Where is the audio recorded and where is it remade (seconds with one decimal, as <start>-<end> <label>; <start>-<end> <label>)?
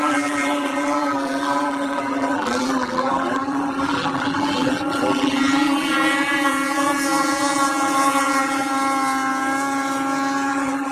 0.0-8.7 remade; 8.7-10.5 recorded; 10.5-10.9 remade